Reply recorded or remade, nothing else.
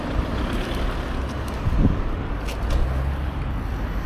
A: recorded